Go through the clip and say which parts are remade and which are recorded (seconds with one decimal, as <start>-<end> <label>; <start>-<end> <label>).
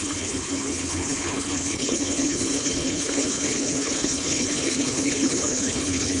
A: 0.0-6.2 remade